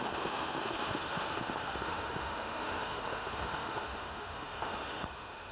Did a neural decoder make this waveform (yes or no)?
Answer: yes